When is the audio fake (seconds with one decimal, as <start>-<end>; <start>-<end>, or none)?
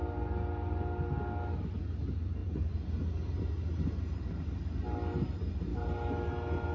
none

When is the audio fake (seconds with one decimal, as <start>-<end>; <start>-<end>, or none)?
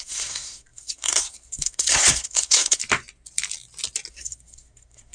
0.0-2.8; 4.1-5.1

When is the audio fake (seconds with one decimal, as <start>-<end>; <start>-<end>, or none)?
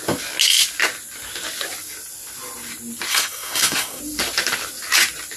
3.1-4.0